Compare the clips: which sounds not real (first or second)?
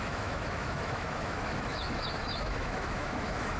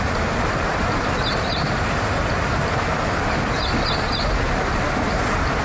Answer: first